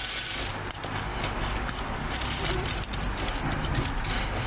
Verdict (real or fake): real